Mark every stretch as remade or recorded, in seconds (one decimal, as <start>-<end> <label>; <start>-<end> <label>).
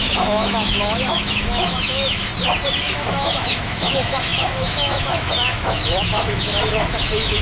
0.0-2.3 remade; 2.3-2.9 recorded; 2.9-7.4 remade